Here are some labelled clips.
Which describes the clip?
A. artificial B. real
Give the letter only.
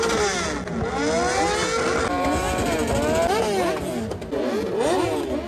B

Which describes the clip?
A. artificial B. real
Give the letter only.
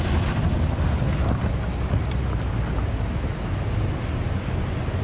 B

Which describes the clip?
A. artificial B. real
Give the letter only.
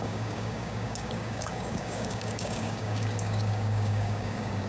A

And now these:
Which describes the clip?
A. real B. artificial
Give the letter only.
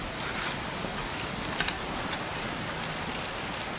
A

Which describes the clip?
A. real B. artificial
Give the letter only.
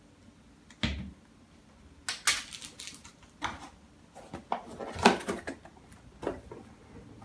A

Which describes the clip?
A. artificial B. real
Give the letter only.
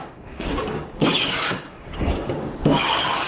A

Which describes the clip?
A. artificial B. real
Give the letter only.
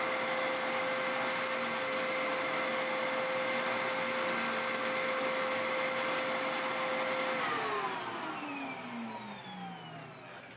B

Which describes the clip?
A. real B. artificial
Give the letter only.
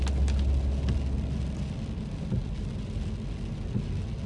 A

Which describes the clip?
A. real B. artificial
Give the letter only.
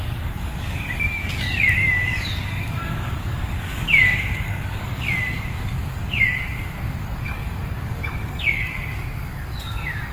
B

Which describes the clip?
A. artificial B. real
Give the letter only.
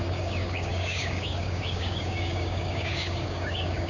A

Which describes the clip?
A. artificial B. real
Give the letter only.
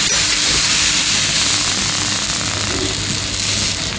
B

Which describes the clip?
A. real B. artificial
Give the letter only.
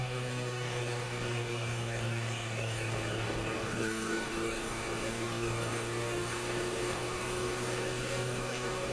B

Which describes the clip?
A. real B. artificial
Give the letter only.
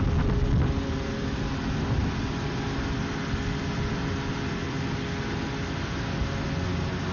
A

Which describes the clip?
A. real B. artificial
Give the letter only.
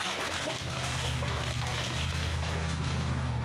B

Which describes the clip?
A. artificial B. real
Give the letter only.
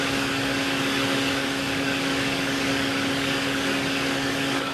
A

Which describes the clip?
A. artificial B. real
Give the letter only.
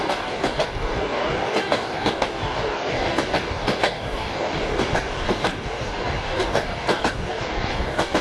A